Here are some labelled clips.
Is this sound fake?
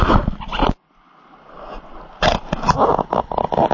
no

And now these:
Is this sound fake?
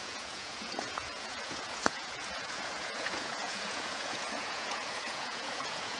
yes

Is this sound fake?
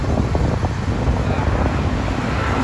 no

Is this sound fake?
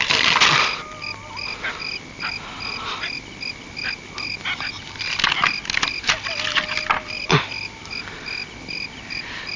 no